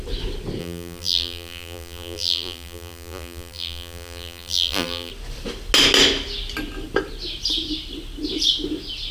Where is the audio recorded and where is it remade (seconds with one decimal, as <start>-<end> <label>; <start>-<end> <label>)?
0.0-0.6 recorded; 0.6-5.1 remade; 5.1-9.1 recorded